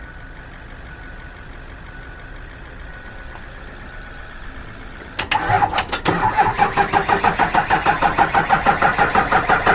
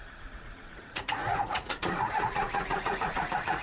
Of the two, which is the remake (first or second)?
second